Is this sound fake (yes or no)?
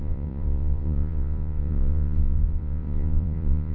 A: yes